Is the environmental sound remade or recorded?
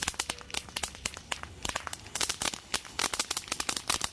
recorded